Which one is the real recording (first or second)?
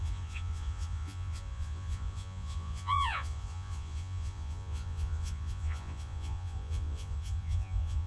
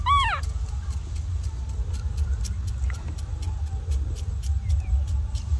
second